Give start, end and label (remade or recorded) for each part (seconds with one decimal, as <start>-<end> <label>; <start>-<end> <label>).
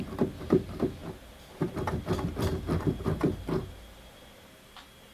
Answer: 0.0-1.0 recorded; 1.0-3.2 remade; 3.2-5.1 recorded